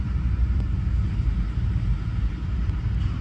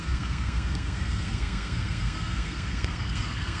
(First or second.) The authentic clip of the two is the first